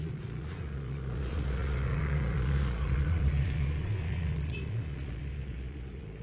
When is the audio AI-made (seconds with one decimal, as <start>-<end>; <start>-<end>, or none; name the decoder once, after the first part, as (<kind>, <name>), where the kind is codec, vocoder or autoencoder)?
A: 0.0-6.2 (vocoder, Vocos)